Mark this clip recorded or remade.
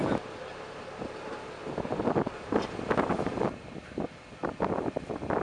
recorded